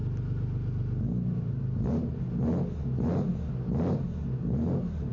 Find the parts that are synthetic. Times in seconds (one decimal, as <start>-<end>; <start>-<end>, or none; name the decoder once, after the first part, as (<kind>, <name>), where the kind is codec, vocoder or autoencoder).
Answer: none